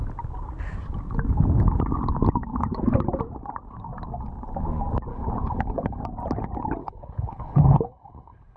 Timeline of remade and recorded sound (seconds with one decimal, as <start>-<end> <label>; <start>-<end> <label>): 0.0-5.1 recorded; 5.1-6.0 remade; 6.0-6.8 recorded; 6.8-8.6 remade